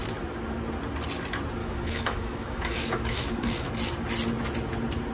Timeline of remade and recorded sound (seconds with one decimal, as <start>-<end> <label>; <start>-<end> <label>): 0.0-1.6 recorded; 1.6-3.7 remade; 3.7-5.1 recorded